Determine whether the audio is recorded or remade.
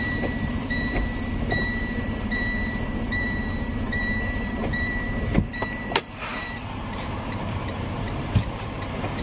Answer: remade